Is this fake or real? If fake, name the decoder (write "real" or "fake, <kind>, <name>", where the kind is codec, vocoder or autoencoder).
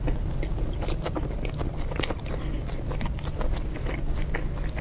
real